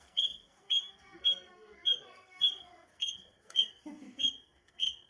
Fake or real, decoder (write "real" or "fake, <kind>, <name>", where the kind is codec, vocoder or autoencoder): fake, codec, SNAC